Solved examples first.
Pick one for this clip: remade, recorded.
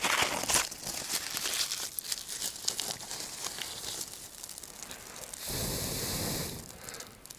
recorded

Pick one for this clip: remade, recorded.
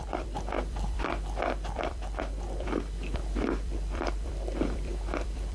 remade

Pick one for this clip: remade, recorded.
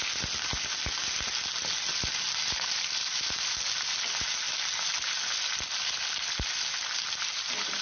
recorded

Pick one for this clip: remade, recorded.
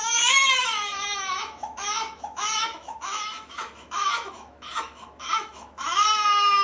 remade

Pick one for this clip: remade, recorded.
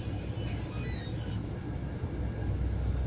recorded